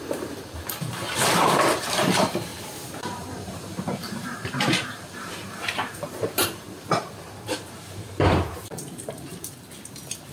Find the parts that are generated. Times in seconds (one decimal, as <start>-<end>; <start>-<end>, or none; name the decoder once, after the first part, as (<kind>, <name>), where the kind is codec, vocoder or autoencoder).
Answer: 0.0-10.3 (vocoder, BigVGAN v2)

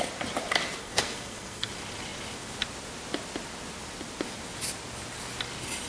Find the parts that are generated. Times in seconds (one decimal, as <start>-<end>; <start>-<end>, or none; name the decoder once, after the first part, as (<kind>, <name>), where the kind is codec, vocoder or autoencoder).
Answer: 0.8-1.7 (codec, SNAC)